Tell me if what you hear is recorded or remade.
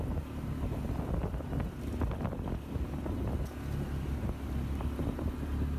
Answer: recorded